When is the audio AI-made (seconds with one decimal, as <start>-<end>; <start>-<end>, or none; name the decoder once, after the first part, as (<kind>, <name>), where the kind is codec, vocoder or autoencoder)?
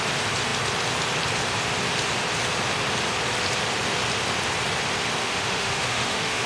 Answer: 5.2-6.5 (autoencoder, DAC-VAE)